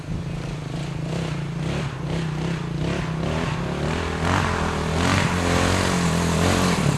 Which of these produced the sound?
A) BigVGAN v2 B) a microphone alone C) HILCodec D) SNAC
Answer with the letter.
B